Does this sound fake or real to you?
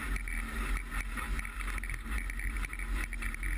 real